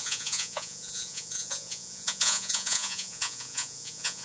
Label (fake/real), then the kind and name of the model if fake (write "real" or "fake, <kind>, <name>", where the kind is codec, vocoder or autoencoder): fake, vocoder, Vocos